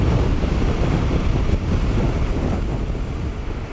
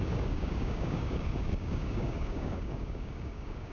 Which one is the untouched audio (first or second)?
first